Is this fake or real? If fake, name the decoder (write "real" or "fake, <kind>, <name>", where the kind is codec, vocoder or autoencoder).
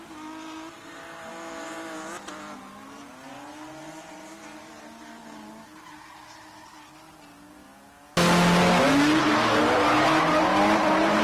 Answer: real